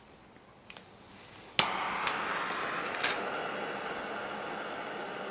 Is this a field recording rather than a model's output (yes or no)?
yes